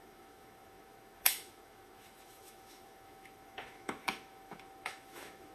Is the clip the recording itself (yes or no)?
no